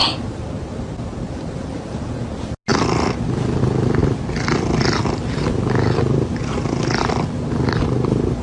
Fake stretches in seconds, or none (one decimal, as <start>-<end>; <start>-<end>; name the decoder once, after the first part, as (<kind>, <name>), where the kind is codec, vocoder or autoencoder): 4.0-5.0 (vocoder, BigVGAN v2)

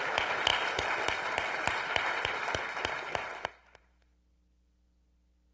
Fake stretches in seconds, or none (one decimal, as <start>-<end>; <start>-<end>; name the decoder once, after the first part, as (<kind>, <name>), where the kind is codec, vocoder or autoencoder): none

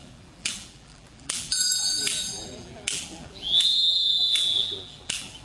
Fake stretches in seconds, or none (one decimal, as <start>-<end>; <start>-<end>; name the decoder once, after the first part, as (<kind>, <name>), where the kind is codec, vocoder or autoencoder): 0.0-5.4 (vocoder, BigVGAN v2)

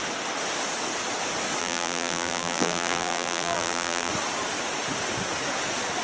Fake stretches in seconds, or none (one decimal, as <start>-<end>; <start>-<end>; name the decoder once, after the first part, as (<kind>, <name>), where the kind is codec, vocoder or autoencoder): 1.6-4.1 (vocoder, BigVGAN v2)

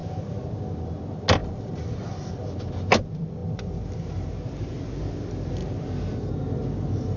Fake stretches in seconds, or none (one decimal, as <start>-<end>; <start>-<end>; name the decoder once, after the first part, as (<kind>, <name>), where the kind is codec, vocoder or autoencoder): 1.4-2.9 (vocoder, BigVGAN v2)

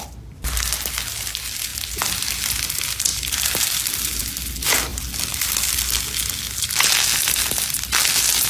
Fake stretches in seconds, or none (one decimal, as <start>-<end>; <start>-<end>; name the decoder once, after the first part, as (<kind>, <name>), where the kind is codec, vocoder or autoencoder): 3.1-4.2 (vocoder, BigVGAN v2); 4.9-5.4

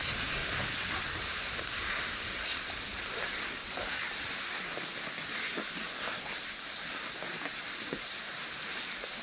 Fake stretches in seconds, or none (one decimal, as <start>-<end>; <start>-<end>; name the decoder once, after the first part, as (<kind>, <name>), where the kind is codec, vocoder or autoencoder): none

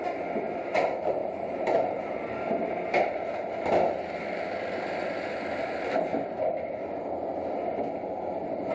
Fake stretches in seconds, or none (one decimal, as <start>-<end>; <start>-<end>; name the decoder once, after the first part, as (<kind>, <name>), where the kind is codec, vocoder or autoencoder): 1.2-3.5 (vocoder, BigVGAN v2)